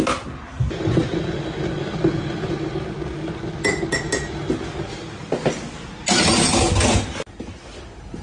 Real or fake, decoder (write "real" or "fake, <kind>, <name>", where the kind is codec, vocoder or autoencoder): real